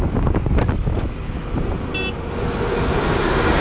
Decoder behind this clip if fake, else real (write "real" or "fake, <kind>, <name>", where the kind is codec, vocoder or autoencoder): real